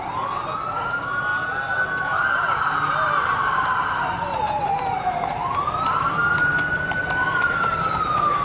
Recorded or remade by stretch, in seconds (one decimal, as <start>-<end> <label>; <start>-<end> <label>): 0.0-8.4 recorded

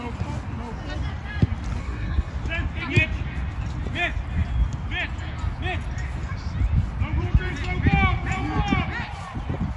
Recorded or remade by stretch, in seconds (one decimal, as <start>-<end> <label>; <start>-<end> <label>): 0.0-1.8 recorded; 1.8-2.3 remade; 2.3-9.8 recorded

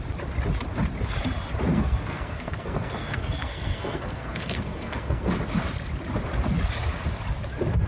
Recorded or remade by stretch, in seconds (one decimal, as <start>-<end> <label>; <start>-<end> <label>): 0.0-1.7 recorded; 1.7-5.3 remade; 5.3-7.9 recorded

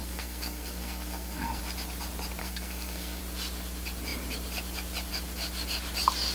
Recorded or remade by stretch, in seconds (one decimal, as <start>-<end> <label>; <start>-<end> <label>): 0.0-1.6 remade; 1.6-2.4 recorded; 2.4-3.2 remade; 3.2-6.3 recorded

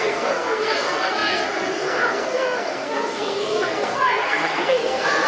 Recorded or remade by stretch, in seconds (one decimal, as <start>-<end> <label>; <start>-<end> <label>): 0.0-5.3 remade